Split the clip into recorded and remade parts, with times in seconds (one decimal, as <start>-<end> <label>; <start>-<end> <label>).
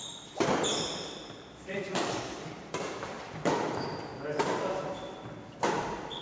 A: 0.0-4.1 remade; 4.1-5.8 recorded; 5.8-6.2 remade